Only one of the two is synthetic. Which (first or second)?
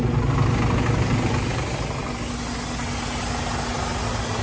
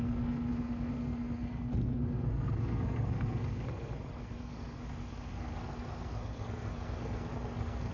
second